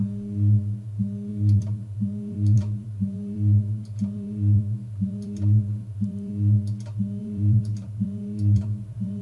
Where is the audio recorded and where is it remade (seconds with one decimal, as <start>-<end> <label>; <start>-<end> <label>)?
0.0-1.3 recorded; 1.3-6.3 remade; 6.3-7.2 recorded; 7.2-9.2 remade